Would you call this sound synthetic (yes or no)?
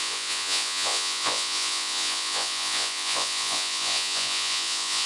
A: yes